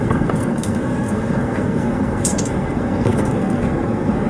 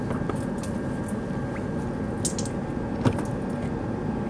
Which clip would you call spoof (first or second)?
first